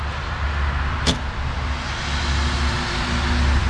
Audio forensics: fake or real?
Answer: real